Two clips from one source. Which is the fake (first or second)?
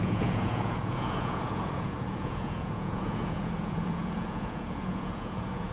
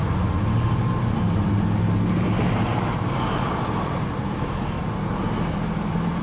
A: first